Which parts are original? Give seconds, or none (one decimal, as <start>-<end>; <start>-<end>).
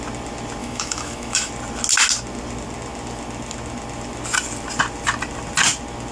0.0-0.6; 1.5-6.1